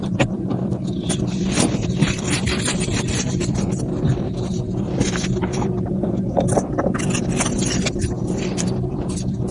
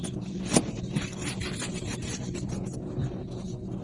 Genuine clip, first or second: second